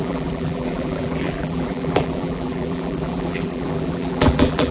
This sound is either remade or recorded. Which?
remade